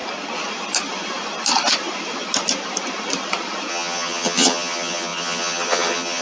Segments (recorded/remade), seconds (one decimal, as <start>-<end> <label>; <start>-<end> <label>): 0.0-3.7 recorded; 3.7-6.2 remade